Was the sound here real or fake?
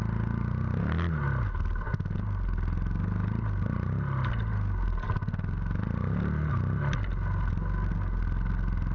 real